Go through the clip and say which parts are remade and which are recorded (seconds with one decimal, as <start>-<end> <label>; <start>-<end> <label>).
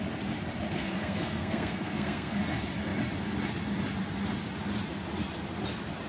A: 0.0-0.7 recorded; 0.7-2.4 remade; 2.4-6.1 recorded